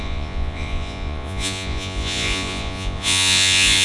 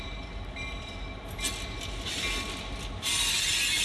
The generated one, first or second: first